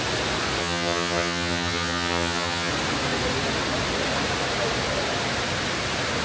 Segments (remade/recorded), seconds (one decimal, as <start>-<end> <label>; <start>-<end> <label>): 0.0-0.6 recorded; 0.6-2.7 remade; 2.7-6.2 recorded